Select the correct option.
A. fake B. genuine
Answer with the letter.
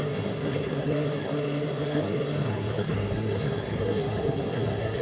A